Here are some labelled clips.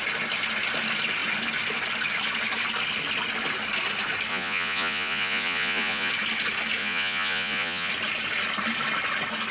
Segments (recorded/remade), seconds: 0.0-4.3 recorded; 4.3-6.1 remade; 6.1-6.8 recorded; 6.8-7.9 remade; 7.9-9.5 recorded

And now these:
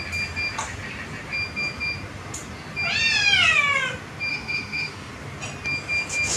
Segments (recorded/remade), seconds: 0.0-4.3 recorded; 4.3-5.1 remade; 5.1-6.4 recorded